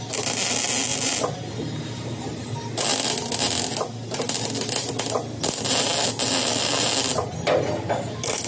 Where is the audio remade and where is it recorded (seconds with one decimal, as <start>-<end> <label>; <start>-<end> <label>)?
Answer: 0.0-8.5 recorded